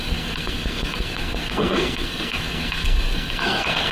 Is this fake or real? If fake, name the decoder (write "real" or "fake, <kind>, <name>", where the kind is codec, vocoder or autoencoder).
fake, codec, SNAC